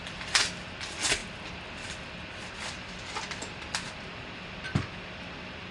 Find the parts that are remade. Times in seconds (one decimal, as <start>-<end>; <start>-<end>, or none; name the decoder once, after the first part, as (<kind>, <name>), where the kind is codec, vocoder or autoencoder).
none